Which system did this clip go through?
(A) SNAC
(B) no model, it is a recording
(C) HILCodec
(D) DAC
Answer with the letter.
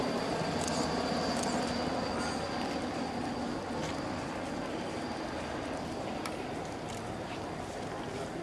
B